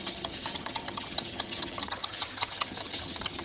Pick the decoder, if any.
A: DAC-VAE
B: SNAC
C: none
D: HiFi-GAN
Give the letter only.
D